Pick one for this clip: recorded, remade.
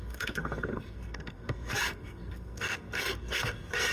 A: remade